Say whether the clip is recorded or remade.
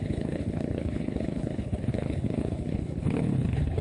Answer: remade